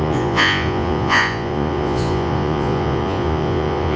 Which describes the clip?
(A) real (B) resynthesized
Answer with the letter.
B